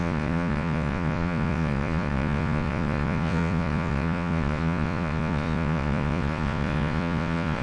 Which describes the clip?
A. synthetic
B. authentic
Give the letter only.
A